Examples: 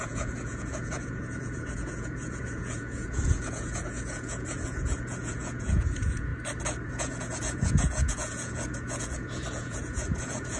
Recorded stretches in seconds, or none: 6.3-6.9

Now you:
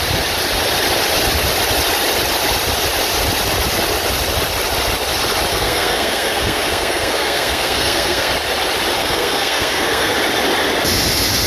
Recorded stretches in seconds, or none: 0.0-5.5; 8.3-9.0; 10.1-11.5

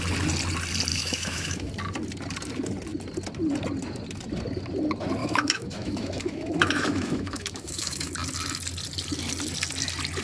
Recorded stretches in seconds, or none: 0.0-0.9; 1.7-5.2; 8.1-10.2